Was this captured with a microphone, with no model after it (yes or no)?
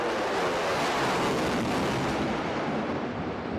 yes